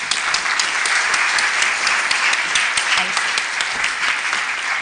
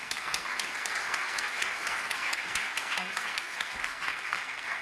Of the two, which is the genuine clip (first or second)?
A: first